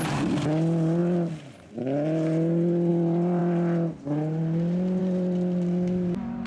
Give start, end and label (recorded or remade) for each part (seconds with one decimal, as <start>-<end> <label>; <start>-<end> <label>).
0.0-6.5 recorded